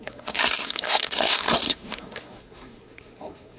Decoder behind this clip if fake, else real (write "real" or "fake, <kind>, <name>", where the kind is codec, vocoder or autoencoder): fake, codec, SNAC